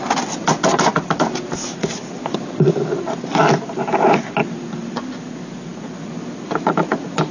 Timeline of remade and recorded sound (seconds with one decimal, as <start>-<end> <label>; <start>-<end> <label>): 0.0-7.3 recorded